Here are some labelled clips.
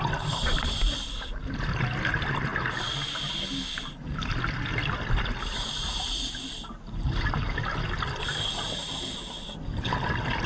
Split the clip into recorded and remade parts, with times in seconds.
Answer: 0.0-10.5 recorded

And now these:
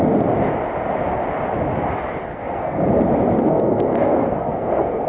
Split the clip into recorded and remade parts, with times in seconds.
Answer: 0.0-2.3 recorded; 2.3-3.0 remade; 3.0-3.4 recorded; 3.4-5.1 remade

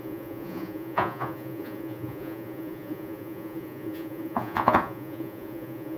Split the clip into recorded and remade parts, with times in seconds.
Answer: 0.0-6.0 remade

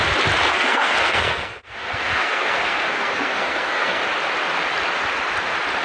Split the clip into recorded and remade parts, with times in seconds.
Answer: 0.0-0.5 recorded; 0.5-4.0 remade; 4.0-5.8 recorded

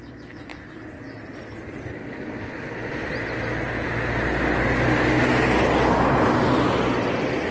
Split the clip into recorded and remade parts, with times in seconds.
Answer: 0.0-7.5 recorded